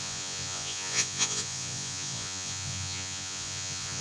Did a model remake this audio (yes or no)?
yes